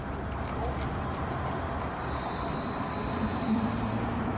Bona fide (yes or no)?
yes